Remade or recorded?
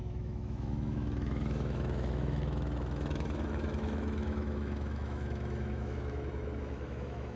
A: remade